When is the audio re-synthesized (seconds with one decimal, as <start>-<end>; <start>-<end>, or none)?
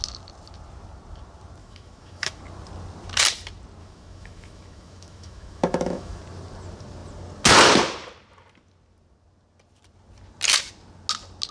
1.6-2.4; 3.8-6.2